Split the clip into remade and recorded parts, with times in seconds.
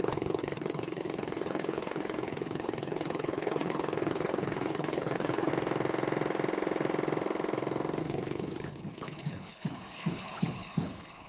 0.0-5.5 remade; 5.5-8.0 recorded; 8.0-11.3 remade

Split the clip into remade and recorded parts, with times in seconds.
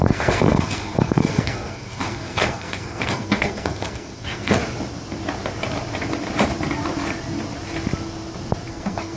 0.0-4.6 remade; 4.6-8.7 recorded; 8.7-9.2 remade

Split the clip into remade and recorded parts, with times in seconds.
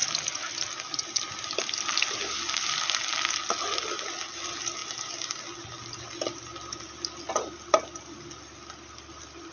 0.0-9.5 recorded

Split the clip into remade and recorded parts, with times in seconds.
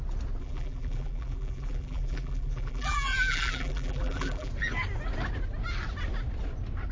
0.0-0.4 recorded; 0.4-4.5 remade; 4.5-6.9 recorded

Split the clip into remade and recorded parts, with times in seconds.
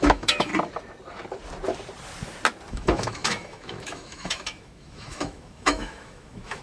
0.0-0.5 remade; 0.5-2.7 recorded; 2.7-6.6 remade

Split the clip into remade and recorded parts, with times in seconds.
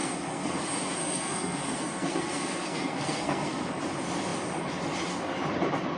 0.0-0.6 remade; 0.6-1.0 recorded; 1.0-3.6 remade; 3.6-6.0 recorded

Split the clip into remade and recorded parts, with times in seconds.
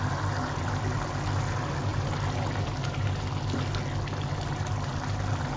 0.0-5.6 recorded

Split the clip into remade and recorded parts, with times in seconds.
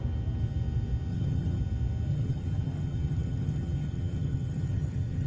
0.0-1.1 recorded; 1.1-1.6 remade; 1.6-2.1 recorded; 2.1-5.3 remade